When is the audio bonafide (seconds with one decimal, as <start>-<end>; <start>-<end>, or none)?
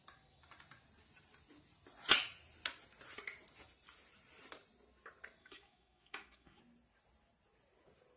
0.0-5.4; 6.6-8.2